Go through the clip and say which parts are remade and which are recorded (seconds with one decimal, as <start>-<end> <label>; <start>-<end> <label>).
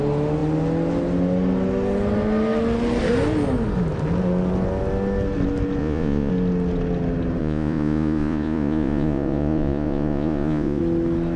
0.0-5.8 recorded; 5.8-6.3 remade; 6.3-7.4 recorded; 7.4-10.8 remade; 10.8-11.4 recorded